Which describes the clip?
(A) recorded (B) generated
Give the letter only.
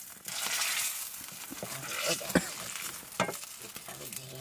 A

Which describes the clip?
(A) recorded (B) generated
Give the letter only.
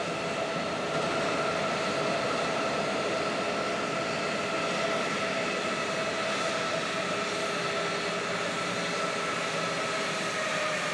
A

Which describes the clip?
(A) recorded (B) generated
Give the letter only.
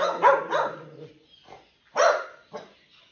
A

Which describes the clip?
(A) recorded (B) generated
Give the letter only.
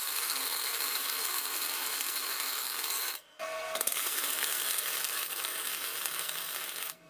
B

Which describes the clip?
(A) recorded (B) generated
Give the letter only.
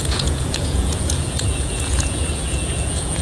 B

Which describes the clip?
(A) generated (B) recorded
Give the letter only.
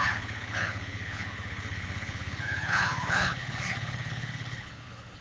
A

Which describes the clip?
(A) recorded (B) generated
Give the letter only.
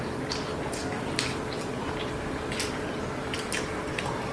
B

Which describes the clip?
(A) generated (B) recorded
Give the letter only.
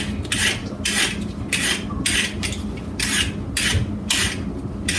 B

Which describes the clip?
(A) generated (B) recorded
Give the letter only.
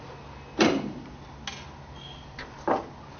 B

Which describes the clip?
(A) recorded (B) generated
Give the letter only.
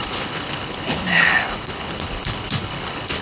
B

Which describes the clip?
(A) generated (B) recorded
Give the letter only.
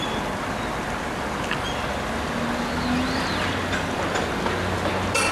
B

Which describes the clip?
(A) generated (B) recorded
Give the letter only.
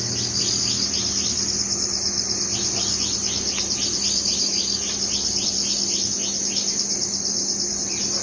B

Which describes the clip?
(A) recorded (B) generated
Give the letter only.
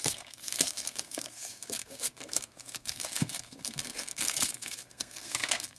B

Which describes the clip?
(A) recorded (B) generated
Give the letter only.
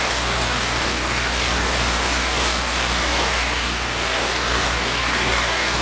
B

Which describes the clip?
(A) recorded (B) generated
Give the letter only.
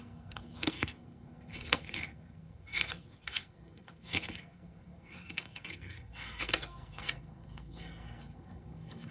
B